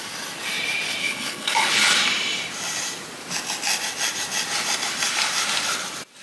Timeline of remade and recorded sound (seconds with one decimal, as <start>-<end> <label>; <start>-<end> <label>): 0.0-1.0 recorded; 1.0-1.9 remade; 1.9-6.2 recorded